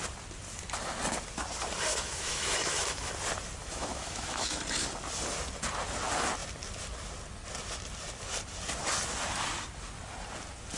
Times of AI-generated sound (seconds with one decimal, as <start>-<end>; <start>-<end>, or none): 1.9-3.1; 3.6-4.6